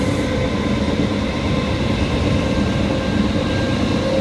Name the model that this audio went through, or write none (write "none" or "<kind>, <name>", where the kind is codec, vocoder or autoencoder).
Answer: none